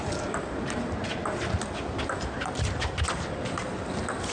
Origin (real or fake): real